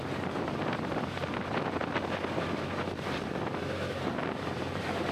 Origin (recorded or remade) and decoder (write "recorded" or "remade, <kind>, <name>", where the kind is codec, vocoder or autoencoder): recorded